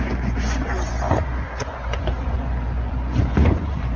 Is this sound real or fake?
fake